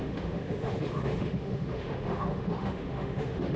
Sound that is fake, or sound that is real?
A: fake